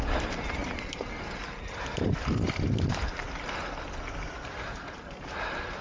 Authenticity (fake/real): real